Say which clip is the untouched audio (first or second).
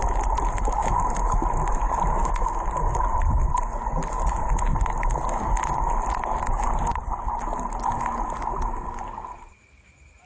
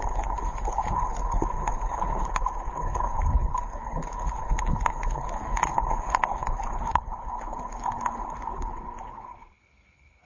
first